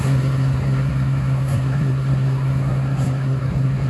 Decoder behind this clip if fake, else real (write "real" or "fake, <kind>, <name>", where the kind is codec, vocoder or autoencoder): fake, codec, SNAC